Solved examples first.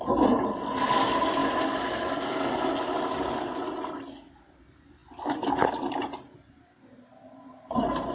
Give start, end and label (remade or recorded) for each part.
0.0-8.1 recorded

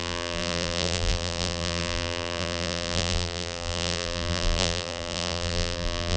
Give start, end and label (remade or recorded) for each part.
0.0-6.2 remade

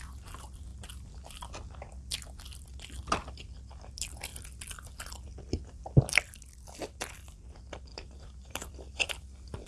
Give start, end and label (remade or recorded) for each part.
0.0-0.7 recorded; 0.7-1.5 remade; 1.5-7.9 recorded; 7.9-8.7 remade; 8.7-9.7 recorded

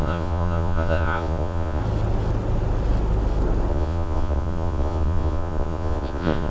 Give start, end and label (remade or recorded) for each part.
0.0-1.8 remade; 1.8-3.7 recorded; 3.7-6.5 remade

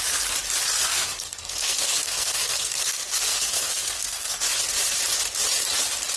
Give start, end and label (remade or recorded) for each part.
0.0-0.8 recorded; 0.8-4.5 remade; 4.5-6.2 recorded

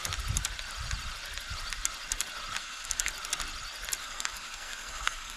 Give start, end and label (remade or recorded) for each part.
0.0-2.6 recorded; 2.6-3.1 remade; 3.1-4.0 recorded; 4.0-5.4 remade